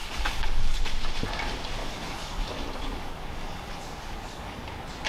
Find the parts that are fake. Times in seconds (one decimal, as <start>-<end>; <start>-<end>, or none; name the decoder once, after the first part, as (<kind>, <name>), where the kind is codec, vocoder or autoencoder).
0.0-0.8 (codec, DAC); 1.8-4.6